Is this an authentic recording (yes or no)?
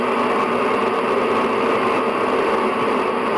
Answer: yes